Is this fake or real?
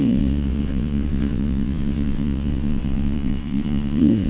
fake